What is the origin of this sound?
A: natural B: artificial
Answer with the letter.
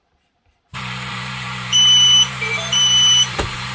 B